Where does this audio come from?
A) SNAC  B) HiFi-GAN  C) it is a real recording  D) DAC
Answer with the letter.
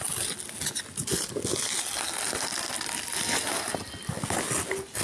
C